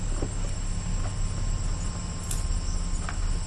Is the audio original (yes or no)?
yes